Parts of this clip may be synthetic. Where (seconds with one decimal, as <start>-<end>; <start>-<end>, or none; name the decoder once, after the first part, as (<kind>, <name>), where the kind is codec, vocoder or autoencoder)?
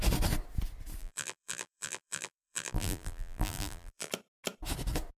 1.0-4.1 (vocoder, BigVGAN v2)